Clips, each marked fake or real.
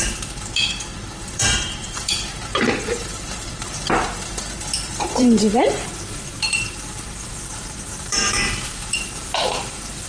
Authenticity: fake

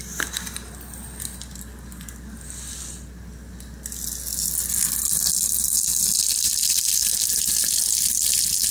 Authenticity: real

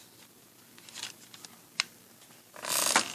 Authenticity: real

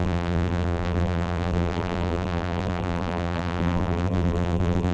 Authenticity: fake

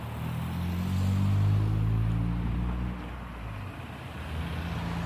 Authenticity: real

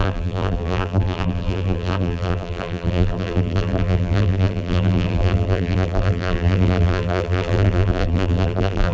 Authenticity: fake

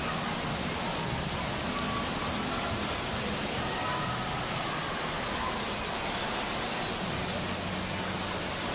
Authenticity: real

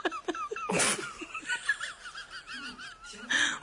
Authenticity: real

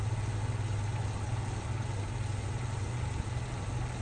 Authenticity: real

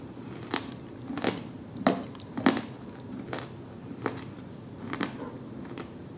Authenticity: real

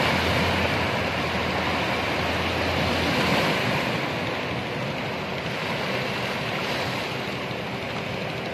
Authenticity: real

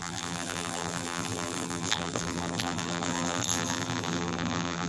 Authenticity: fake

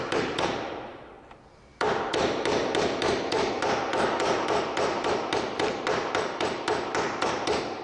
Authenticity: fake